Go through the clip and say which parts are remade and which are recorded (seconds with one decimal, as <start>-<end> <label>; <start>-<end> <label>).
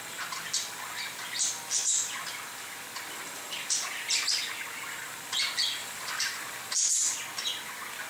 0.0-8.1 recorded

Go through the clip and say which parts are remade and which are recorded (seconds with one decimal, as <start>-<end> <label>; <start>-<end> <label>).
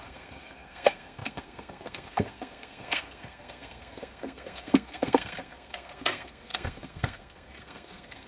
0.0-8.3 remade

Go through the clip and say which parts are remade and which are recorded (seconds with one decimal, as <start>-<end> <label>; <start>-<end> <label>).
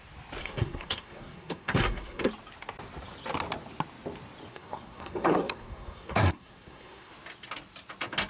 0.0-0.4 recorded; 0.4-2.3 remade; 2.3-4.5 recorded; 4.5-7.1 remade; 7.1-8.3 recorded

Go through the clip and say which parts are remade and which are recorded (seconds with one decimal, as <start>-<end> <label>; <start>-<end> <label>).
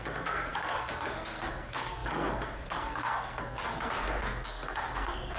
0.0-5.4 remade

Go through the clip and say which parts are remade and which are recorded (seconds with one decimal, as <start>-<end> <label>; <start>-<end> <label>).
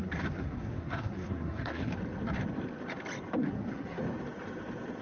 0.0-1.9 remade; 1.9-3.4 recorded; 3.4-4.0 remade; 4.0-5.0 recorded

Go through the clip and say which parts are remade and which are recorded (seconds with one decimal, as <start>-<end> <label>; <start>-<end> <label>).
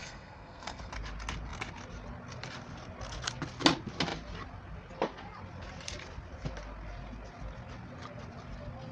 0.0-0.9 remade; 0.9-8.9 recorded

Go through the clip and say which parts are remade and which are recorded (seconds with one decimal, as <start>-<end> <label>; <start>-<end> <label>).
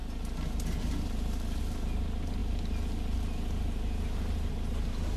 0.0-5.2 recorded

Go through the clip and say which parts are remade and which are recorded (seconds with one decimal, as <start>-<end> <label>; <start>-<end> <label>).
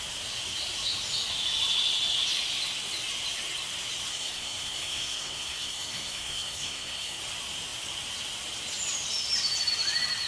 0.0-4.1 recorded; 4.1-7.2 remade; 7.2-10.3 recorded